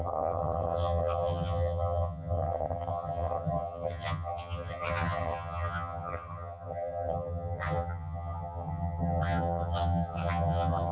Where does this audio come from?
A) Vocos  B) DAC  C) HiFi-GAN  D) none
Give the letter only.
C